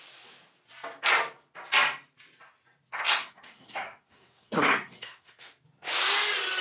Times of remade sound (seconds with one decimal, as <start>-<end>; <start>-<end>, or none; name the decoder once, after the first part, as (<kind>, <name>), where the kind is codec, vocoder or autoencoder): 2.9-5.4 (codec, SNAC)